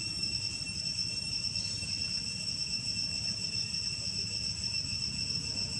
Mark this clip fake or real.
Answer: real